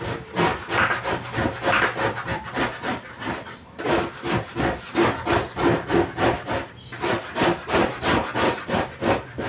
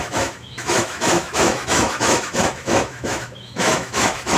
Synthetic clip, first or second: second